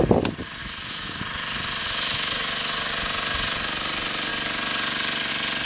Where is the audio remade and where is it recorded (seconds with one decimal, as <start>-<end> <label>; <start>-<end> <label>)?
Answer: 0.0-0.6 recorded; 0.6-1.2 remade; 1.2-1.8 recorded; 1.8-2.9 remade; 2.9-5.7 recorded